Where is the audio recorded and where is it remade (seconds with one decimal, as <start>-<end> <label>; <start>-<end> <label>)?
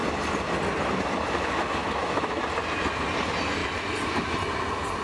0.0-1.8 recorded; 1.8-2.4 remade; 2.4-5.0 recorded